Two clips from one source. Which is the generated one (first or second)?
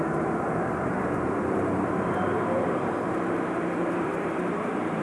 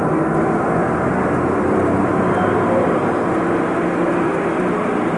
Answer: first